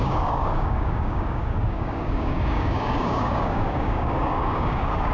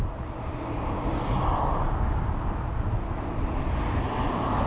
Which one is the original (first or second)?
second